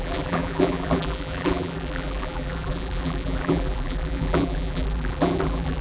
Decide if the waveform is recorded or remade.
remade